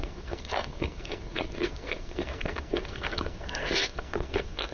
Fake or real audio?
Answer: fake